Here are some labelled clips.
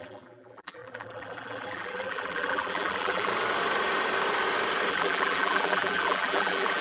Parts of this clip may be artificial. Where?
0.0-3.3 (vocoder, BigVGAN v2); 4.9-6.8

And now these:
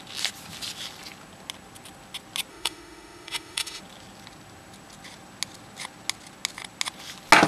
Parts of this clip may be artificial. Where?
2.5-3.8 (autoencoder, DAC-VAE)